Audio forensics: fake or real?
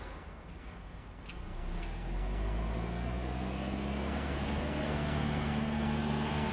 fake